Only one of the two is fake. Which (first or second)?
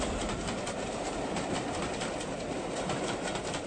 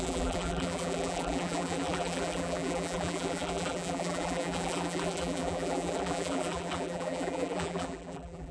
second